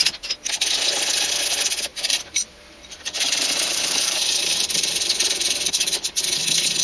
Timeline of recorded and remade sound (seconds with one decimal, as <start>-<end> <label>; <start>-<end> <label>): 0.0-1.9 recorded; 1.9-6.0 remade; 6.0-6.8 recorded